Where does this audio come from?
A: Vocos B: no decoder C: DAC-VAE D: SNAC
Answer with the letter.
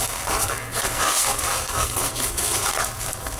D